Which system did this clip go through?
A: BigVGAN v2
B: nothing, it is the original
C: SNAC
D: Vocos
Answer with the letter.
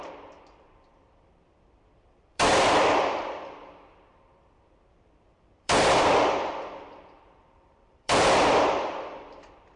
A